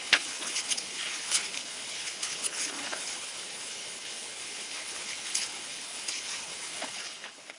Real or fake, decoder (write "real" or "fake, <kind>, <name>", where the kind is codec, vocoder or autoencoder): fake, codec, HILCodec